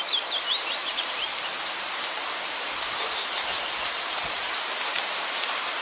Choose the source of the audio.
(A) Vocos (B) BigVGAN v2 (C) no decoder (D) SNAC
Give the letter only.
B